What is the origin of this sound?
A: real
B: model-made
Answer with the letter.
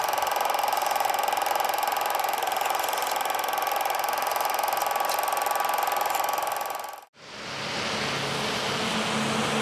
A